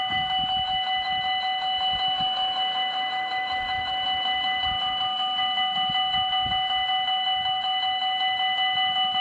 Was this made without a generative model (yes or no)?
no